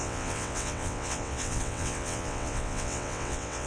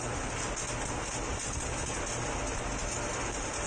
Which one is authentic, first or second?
second